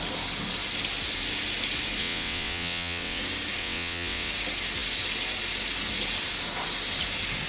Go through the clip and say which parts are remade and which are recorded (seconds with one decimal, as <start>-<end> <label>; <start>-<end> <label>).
0.0-2.0 recorded; 2.0-3.2 remade; 3.2-3.6 recorded; 3.6-4.3 remade; 4.3-7.5 recorded